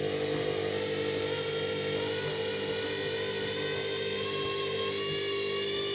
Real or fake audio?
real